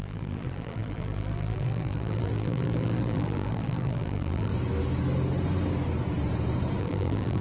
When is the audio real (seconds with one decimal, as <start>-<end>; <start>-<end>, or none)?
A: 4.5-6.8